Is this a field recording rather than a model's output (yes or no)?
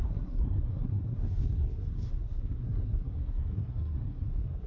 no